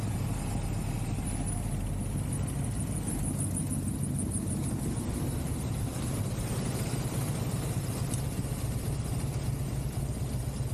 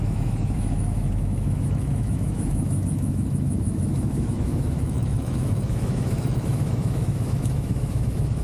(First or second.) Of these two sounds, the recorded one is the first